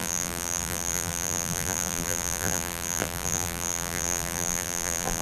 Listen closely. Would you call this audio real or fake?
fake